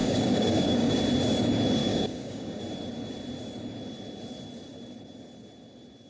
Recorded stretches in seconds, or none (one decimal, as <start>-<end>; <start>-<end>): 0.9-1.8; 2.6-6.1